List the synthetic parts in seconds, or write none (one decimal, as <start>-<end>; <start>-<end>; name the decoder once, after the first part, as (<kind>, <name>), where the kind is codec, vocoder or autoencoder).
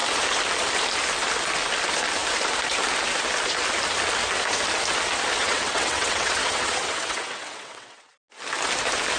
5.4-8.1 (vocoder, WaveNeXt)